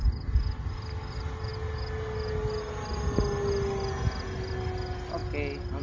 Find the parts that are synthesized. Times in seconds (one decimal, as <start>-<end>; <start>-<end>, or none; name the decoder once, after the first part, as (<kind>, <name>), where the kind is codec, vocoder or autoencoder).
none